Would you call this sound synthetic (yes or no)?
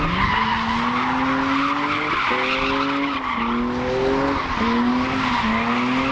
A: no